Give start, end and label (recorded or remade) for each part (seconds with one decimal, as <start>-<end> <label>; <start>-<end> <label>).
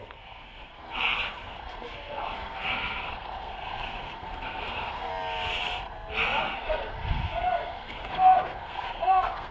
0.0-5.1 remade; 5.1-6.4 recorded; 6.4-9.5 remade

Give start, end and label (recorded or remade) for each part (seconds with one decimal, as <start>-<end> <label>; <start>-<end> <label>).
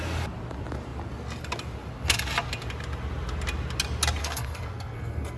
0.0-4.2 recorded; 4.2-5.4 remade